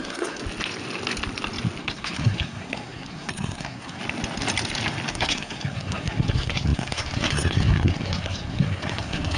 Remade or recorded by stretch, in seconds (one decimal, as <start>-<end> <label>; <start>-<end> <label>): 0.0-0.4 remade; 0.4-1.8 recorded; 1.8-4.0 remade; 4.0-5.1 recorded; 5.1-9.4 remade